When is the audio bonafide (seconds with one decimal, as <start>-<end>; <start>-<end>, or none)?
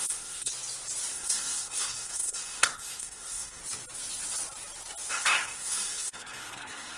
0.5-1.1; 3.6-5.1